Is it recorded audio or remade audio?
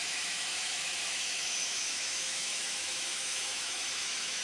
remade